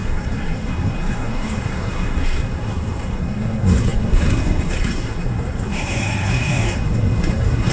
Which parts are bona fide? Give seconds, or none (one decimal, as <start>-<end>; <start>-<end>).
none